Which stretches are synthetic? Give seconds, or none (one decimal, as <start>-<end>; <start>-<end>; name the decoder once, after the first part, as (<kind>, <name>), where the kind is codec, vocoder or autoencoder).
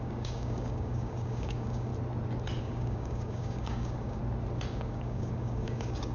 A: 0.0-1.9 (codec, DAC); 2.6-4.2; 4.7-6.1